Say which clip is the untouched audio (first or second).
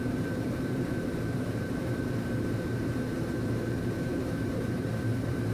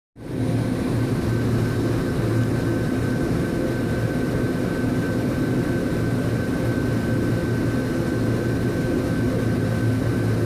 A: second